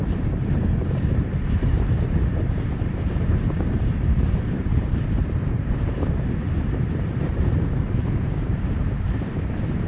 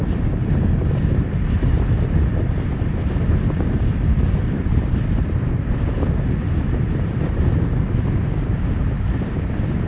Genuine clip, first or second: second